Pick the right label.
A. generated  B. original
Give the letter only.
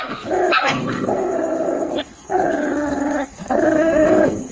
A